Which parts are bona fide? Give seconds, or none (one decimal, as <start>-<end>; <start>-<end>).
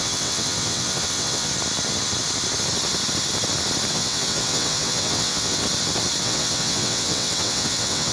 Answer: 1.5-3.9; 5.6-6.2